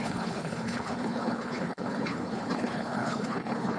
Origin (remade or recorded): remade